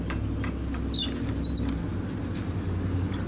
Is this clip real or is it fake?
real